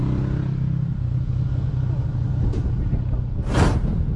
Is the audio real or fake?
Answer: real